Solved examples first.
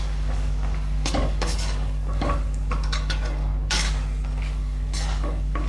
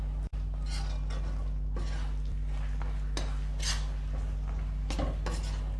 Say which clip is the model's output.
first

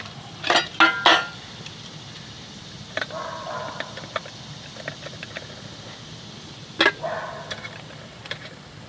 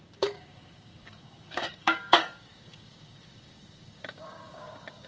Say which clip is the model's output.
second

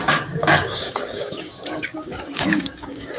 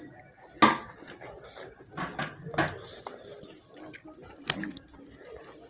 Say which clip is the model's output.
first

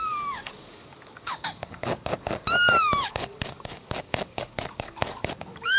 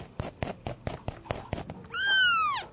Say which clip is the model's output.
first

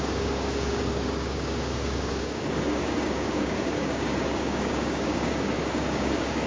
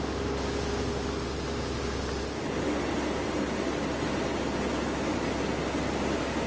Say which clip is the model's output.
first